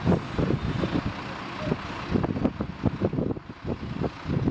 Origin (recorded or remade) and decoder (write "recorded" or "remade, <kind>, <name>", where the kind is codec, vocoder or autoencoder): recorded